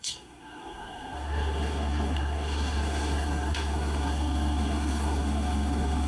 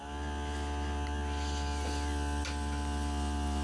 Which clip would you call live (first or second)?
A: second